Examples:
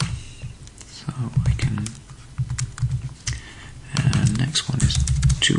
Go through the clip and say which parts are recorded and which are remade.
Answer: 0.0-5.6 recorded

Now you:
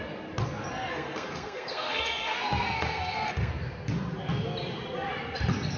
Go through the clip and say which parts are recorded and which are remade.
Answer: 0.0-0.9 recorded; 0.9-3.5 remade; 3.5-5.8 recorded

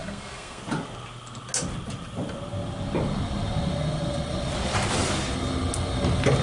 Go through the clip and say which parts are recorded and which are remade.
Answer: 0.0-0.6 remade; 0.6-6.4 recorded

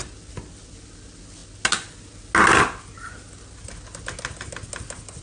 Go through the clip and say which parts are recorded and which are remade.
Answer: 0.0-5.2 recorded